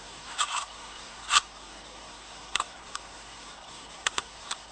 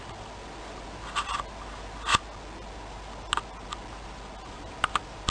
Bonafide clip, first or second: second